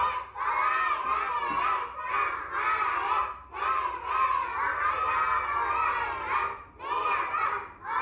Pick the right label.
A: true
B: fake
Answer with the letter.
A